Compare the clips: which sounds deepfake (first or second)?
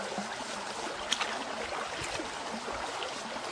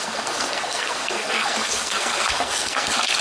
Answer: second